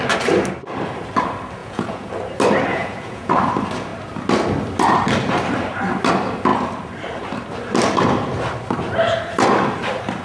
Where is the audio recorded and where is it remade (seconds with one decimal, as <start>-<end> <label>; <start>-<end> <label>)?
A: 0.0-1.6 recorded; 1.6-2.1 remade; 2.1-2.7 recorded; 2.7-3.3 remade; 3.3-10.2 recorded